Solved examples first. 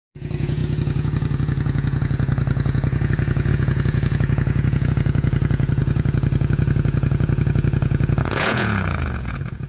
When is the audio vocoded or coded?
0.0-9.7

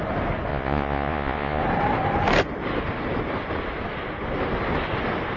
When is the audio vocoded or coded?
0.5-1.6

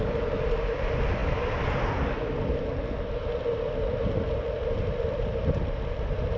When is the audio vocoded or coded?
none